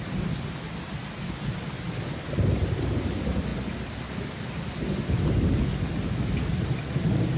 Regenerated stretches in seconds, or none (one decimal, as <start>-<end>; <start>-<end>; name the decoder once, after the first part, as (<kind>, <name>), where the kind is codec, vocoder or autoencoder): none